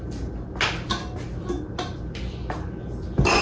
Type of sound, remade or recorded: recorded